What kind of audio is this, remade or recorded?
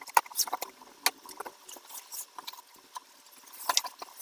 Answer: recorded